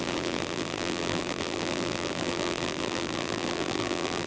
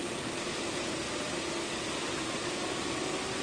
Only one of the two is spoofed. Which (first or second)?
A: first